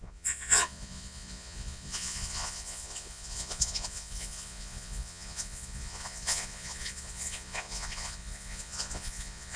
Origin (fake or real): fake